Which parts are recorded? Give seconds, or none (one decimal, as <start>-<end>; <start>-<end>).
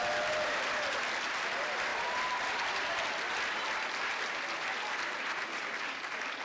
0.0-6.4